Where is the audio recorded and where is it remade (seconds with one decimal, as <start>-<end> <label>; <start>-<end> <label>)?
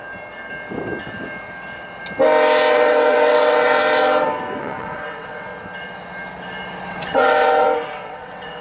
0.0-2.7 recorded; 2.7-3.8 remade; 3.8-4.6 recorded; 4.6-5.5 remade; 5.5-6.9 recorded; 6.9-8.6 remade